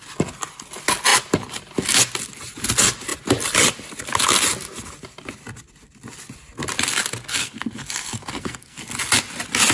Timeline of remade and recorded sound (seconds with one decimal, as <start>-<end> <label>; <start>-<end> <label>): 0.0-7.3 recorded; 7.3-8.8 remade; 8.8-9.7 recorded